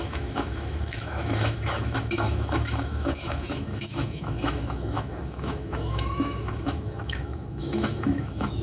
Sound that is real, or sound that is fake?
fake